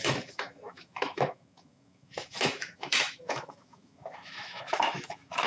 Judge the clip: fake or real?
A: fake